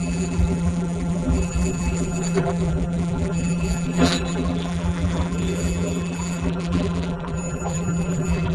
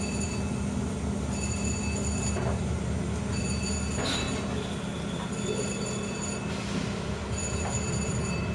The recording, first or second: second